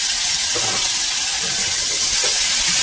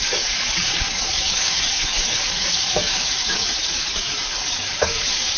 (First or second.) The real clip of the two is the first